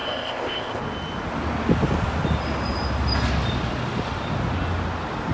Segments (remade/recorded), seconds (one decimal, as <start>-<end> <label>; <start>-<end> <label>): 0.0-0.8 remade; 0.8-5.3 recorded